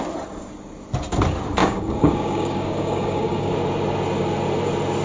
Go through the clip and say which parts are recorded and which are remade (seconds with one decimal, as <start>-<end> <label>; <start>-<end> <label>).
0.0-1.6 recorded; 1.6-3.5 remade; 3.5-5.0 recorded